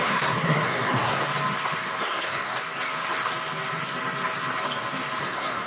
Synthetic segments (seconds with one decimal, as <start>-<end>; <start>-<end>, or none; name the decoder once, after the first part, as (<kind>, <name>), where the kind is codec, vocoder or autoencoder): 0.0-1.2 (codec, SNAC); 2.0-2.5; 5.2-5.7